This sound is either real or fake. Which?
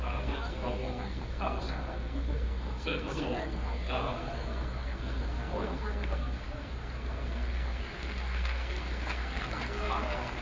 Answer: fake